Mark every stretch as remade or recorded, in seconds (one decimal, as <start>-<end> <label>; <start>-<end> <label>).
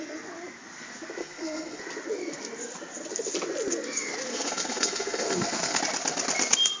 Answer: 0.0-1.2 recorded; 1.2-1.8 remade; 1.8-4.3 recorded; 4.3-5.8 remade; 5.8-6.8 recorded